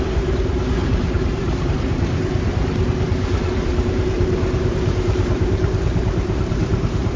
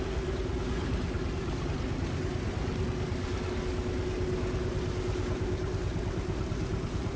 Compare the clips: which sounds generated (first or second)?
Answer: first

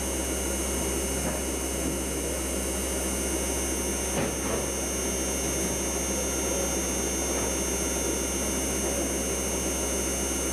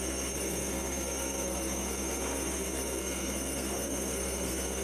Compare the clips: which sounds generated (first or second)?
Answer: second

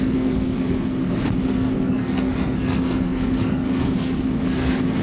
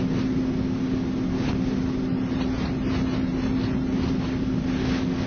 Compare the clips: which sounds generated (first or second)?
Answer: first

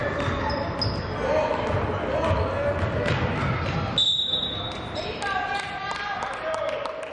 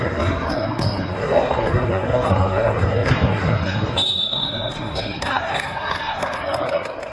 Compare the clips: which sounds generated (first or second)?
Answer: second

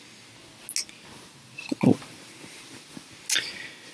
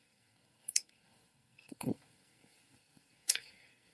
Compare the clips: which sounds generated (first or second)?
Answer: second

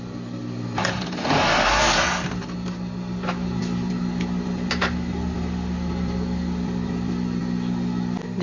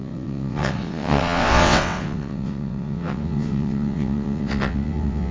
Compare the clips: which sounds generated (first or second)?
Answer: second